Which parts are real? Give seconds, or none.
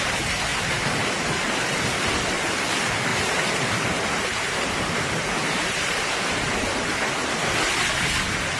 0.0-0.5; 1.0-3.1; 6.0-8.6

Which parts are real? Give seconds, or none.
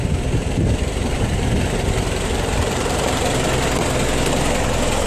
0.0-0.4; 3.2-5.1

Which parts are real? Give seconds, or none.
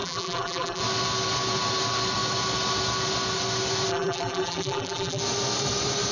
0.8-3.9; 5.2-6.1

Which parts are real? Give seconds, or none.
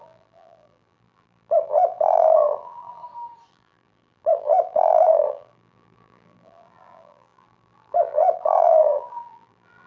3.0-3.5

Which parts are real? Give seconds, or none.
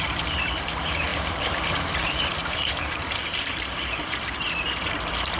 none